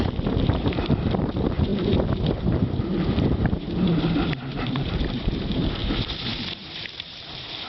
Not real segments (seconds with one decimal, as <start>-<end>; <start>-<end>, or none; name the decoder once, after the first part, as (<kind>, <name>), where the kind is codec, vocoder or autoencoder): 0.0-7.7 (vocoder, BigVGAN v2)